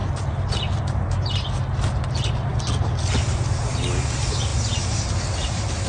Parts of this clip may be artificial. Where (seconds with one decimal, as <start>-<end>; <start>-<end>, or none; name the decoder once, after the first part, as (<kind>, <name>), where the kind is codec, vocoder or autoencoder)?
none